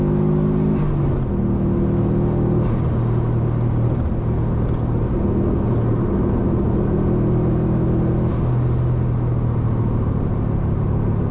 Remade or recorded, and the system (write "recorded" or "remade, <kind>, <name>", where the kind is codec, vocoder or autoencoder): recorded